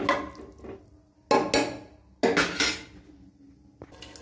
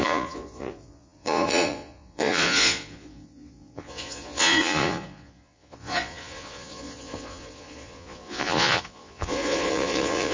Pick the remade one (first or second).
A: second